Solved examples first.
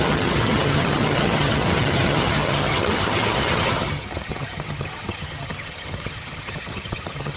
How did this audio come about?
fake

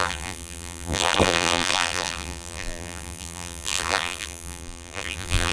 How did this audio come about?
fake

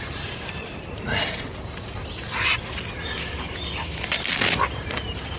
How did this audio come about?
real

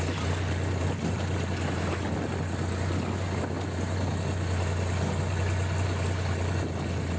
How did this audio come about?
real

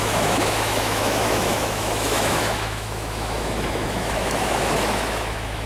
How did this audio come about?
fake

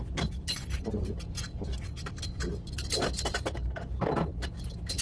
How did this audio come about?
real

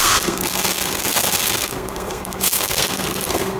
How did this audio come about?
fake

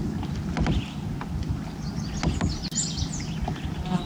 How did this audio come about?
real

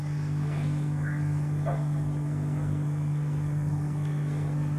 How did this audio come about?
fake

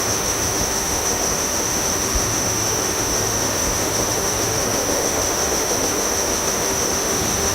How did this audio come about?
fake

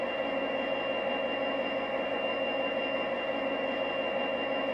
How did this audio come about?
real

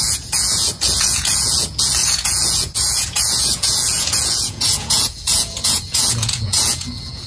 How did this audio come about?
fake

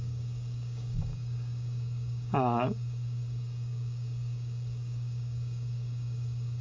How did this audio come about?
fake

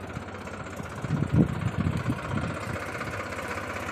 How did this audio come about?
real